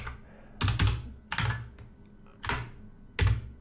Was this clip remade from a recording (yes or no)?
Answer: no